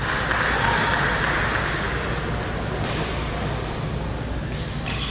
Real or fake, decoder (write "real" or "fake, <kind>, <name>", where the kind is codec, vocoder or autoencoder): real